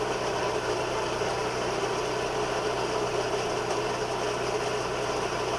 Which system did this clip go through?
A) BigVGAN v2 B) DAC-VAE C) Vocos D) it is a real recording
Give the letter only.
D